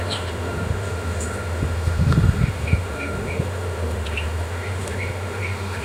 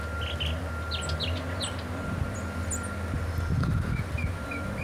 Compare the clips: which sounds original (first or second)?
second